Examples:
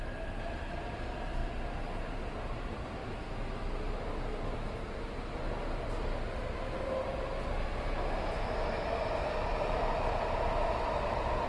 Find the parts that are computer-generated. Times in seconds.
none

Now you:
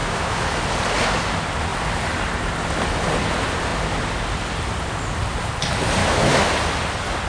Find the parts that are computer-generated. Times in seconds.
0.0-0.6 (autoencoder, DAC-VAE); 6.0-6.5

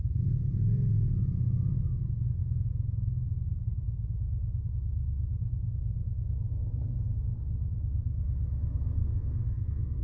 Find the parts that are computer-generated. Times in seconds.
9.0-10.0 (codec, SNAC)

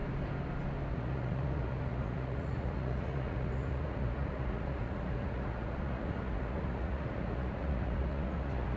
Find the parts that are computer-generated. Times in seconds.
0.9-8.8 (vocoder, Vocos)

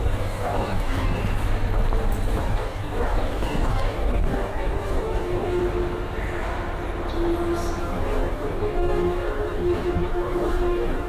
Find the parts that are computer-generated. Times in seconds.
0.0-1.2 (codec, DAC); 2.4-5.6; 7.8-11.1

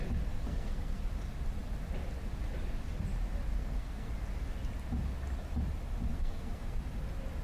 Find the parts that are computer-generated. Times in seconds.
0.4-1.0 (codec, SNAC); 3.5-4.1; 6.1-6.8